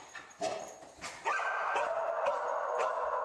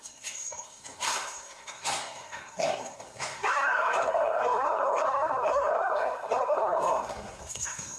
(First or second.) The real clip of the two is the first